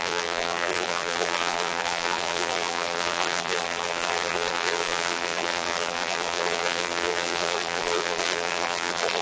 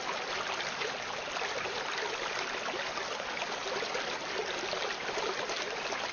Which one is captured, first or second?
second